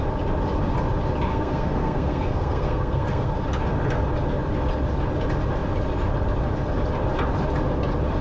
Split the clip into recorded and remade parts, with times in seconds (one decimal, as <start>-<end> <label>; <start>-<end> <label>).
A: 0.0-1.3 recorded; 1.3-3.3 remade; 3.3-8.2 recorded